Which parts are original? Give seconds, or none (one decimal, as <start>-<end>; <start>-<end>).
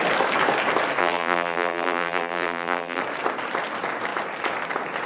0.0-1.0; 3.0-5.1